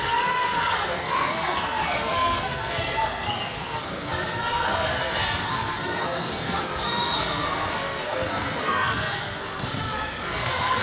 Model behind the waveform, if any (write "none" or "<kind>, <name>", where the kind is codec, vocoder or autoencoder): codec, SNAC